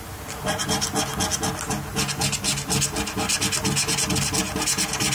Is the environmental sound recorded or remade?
recorded